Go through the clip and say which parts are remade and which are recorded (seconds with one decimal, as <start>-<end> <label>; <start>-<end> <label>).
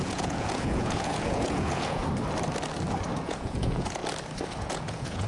0.0-2.0 remade; 2.0-3.2 recorded; 3.2-4.0 remade; 4.0-4.6 recorded; 4.6-5.3 remade